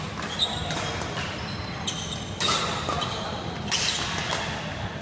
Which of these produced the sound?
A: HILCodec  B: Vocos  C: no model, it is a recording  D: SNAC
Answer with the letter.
C